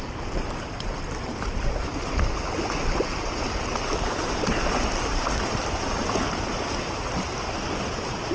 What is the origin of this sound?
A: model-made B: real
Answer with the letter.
B